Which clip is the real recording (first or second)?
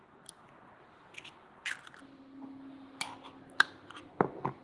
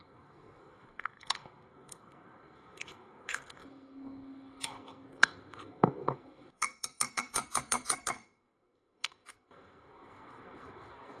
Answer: first